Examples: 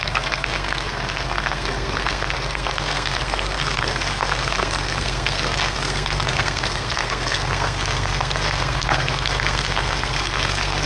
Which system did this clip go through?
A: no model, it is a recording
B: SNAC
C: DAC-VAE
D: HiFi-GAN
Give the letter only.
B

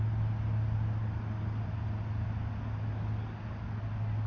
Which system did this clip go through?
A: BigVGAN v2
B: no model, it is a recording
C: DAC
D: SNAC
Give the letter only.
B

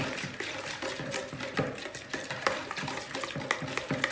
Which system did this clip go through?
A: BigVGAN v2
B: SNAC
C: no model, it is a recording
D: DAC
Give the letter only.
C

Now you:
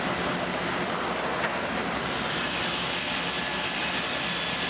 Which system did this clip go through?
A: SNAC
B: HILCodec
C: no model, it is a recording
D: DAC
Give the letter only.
C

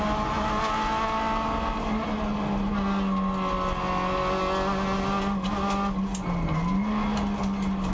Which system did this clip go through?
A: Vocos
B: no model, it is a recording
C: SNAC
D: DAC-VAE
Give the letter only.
B